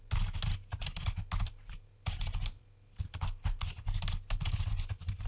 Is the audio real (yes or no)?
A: yes